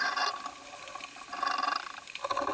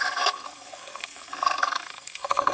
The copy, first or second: second